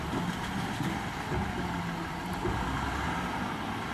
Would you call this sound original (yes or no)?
yes